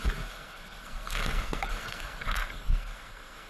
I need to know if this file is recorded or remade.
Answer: remade